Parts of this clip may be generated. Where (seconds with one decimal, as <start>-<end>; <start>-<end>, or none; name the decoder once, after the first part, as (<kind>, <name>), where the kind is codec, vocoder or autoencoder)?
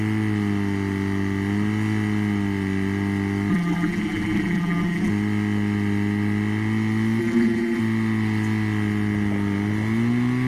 3.5-5.1 (vocoder, BigVGAN v2); 7.2-7.8